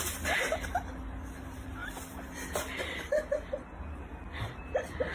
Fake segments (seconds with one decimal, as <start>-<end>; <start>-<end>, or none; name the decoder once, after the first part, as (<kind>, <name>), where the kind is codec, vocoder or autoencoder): none